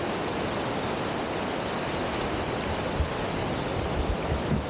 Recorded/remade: recorded